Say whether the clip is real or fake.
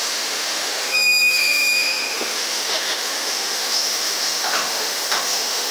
fake